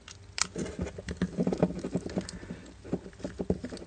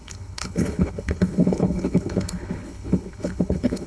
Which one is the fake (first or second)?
second